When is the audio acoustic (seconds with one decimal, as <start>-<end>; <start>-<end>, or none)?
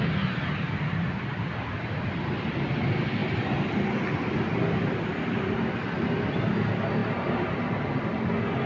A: 0.0-8.7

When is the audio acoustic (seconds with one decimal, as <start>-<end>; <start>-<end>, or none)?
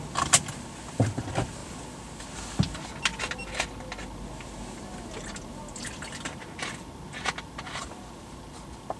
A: 0.0-9.0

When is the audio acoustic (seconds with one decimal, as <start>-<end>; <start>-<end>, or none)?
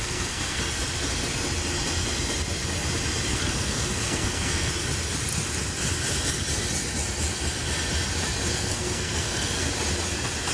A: 0.6-3.3; 4.7-8.5; 9.7-10.5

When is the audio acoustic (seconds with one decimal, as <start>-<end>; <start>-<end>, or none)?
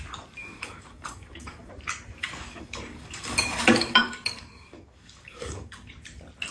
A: 0.0-0.4; 1.7-2.2; 5.9-6.5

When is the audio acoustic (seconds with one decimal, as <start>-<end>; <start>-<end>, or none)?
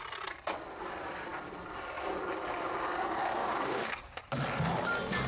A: 0.0-3.4; 4.2-5.3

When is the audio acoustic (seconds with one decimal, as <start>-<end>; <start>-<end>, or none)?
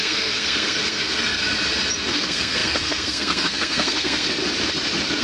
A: 1.4-2.1; 4.4-5.2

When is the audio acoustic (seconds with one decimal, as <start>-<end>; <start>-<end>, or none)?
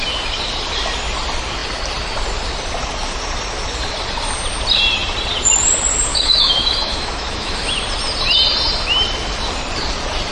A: 0.0-6.1; 7.7-10.3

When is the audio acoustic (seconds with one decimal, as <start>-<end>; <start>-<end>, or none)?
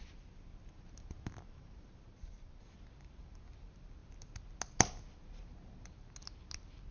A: 0.0-6.9